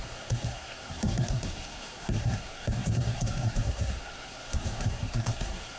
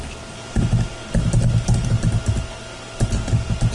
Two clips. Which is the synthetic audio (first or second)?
first